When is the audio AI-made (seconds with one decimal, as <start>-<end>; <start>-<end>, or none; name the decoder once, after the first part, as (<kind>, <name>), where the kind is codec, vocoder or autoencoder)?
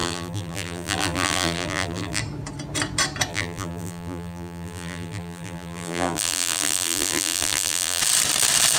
0.0-2.2 (vocoder, BigVGAN v2); 3.3-8.0